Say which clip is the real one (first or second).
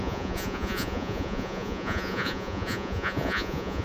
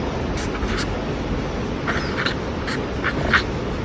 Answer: second